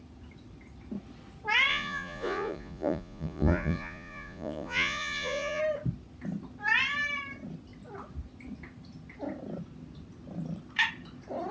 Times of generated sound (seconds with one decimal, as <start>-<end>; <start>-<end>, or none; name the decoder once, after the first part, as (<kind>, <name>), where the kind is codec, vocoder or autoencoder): 1.7-5.6 (vocoder, Vocos)